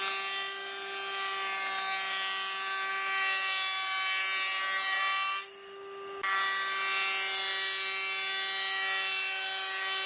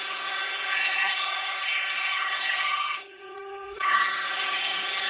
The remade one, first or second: second